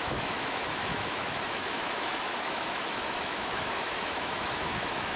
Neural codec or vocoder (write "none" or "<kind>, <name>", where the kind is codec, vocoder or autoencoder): autoencoder, DAC-VAE